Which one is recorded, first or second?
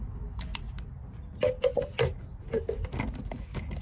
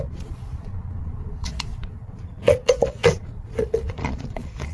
first